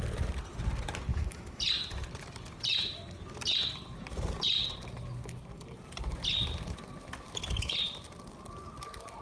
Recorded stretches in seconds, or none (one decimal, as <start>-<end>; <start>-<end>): 0.0-1.1; 1.6-9.2